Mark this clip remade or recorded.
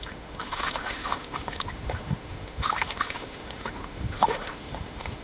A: remade